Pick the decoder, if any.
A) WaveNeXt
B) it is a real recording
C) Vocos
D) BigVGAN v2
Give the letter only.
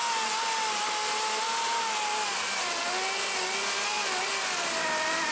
B